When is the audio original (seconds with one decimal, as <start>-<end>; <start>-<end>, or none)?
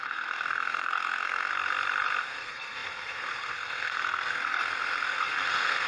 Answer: 1.5-2.2